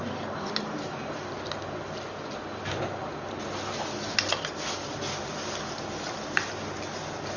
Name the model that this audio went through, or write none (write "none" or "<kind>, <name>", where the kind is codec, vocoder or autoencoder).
none